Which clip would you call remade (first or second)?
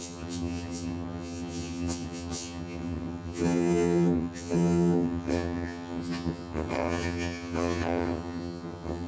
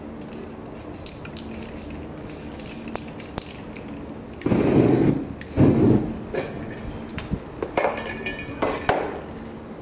first